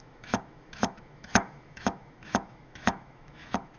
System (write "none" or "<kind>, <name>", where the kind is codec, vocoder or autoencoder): autoencoder, DAC-VAE